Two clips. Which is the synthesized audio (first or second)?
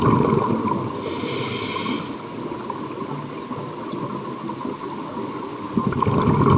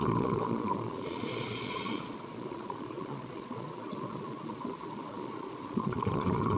second